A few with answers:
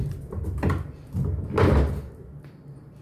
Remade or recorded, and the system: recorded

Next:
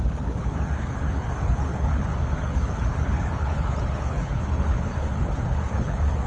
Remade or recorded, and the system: remade, codec, HILCodec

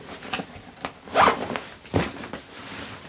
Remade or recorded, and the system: recorded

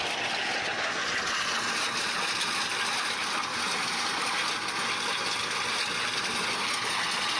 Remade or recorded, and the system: recorded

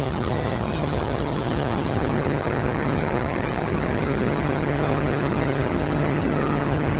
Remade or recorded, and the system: remade, vocoder, HiFi-GAN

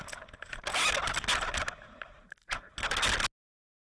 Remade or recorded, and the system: recorded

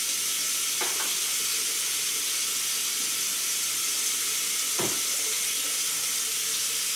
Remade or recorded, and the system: recorded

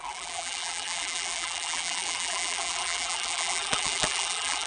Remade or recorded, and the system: remade, vocoder, BigVGAN v2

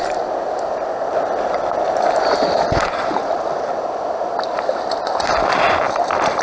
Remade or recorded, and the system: recorded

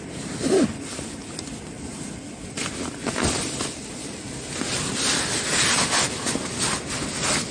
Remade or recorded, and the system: recorded